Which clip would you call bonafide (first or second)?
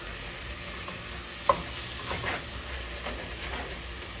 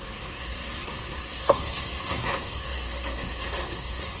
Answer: first